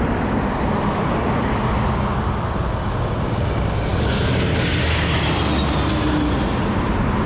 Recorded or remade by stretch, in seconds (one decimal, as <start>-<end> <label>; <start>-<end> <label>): 0.0-7.3 recorded